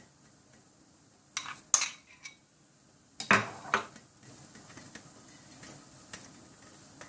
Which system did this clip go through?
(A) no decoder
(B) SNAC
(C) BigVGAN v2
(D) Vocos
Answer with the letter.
A